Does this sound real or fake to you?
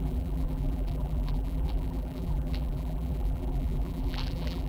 fake